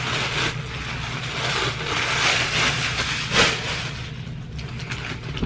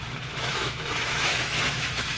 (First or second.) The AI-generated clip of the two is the second